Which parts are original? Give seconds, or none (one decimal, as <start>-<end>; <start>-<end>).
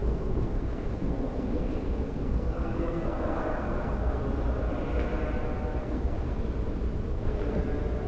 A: 4.2-5.8; 6.4-7.1; 7.6-8.1